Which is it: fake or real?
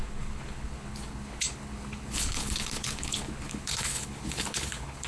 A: fake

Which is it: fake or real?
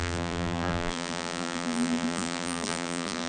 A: fake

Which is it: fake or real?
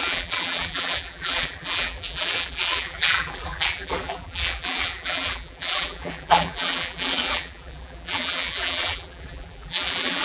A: fake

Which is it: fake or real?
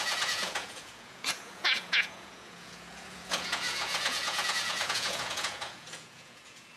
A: fake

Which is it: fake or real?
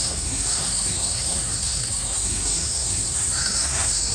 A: fake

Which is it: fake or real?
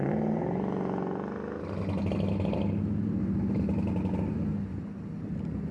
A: real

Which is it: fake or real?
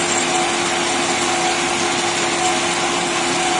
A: real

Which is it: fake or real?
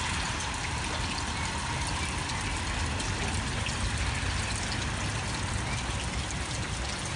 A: real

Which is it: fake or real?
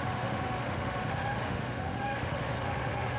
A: fake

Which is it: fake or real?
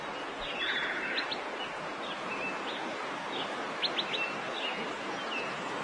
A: real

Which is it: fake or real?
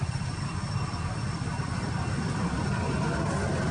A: real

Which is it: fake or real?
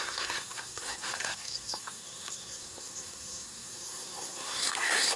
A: fake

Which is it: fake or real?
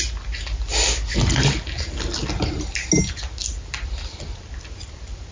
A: real